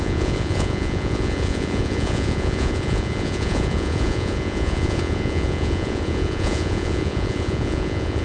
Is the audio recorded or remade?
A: remade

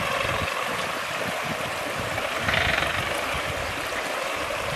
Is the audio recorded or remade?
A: recorded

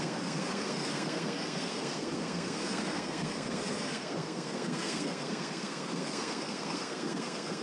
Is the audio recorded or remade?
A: remade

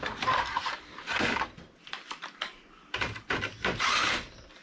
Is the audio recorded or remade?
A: remade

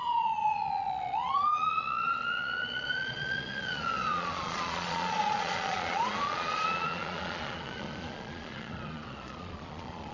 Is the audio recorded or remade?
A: remade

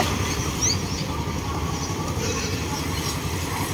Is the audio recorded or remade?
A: recorded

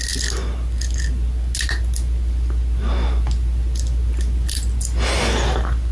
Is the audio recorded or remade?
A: recorded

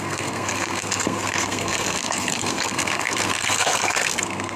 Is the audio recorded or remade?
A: remade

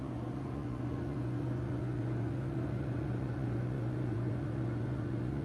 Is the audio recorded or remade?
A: remade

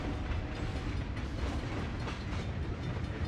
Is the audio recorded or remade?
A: recorded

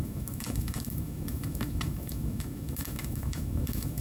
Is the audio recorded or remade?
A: remade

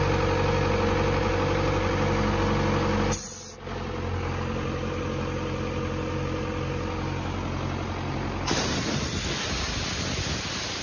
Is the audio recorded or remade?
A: recorded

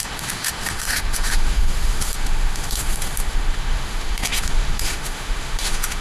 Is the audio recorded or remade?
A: remade